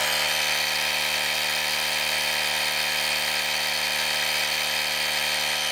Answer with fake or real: fake